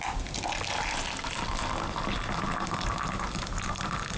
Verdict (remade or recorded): recorded